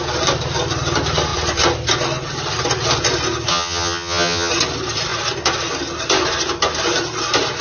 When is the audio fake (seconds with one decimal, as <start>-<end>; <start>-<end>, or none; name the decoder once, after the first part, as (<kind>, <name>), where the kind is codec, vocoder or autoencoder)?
3.5-4.5 (vocoder, HiFi-GAN)